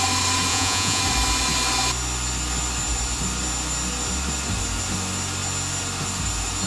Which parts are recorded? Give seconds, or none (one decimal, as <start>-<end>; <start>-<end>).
0.0-0.5; 1.0-6.7